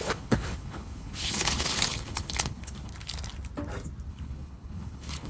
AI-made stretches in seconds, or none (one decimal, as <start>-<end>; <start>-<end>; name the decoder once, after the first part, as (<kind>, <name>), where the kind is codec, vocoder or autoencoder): 0.0-2.9 (codec, HILCodec); 4.1-5.3